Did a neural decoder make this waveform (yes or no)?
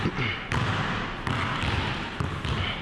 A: no